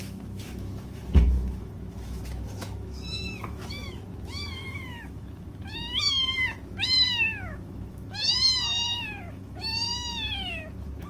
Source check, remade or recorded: remade